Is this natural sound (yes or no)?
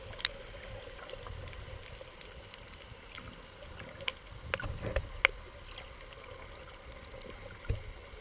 yes